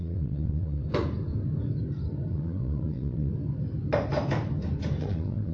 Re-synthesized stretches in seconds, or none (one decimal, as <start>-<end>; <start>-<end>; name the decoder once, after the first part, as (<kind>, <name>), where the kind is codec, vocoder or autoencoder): 0.0-0.8 (vocoder, Vocos); 2.3-3.3; 5.0-5.5